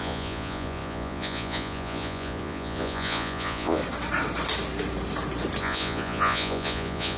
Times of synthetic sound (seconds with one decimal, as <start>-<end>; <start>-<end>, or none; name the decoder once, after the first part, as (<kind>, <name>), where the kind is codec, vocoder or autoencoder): 0.0-3.8 (vocoder, Vocos); 5.6-7.2